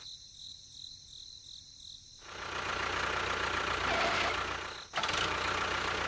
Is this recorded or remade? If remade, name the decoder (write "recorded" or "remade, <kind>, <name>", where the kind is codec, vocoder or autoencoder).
recorded